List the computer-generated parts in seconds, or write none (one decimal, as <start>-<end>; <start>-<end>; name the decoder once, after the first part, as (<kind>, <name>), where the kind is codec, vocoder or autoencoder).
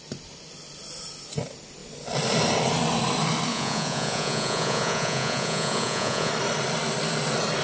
3.5-6.3 (vocoder, Vocos)